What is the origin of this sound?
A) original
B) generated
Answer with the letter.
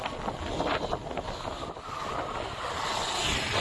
A